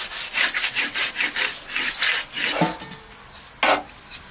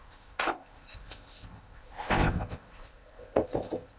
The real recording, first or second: first